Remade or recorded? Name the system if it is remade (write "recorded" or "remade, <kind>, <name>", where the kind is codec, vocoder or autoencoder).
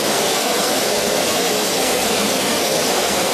remade, codec, SNAC